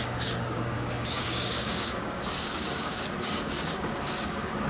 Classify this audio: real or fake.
fake